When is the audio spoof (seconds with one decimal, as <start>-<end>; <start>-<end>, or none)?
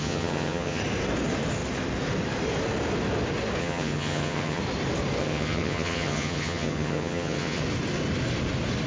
0.0-0.8; 3.6-4.6; 5.2-7.6